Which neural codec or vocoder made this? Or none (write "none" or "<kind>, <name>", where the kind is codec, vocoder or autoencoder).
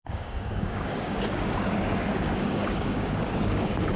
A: codec, DAC